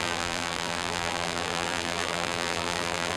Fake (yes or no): yes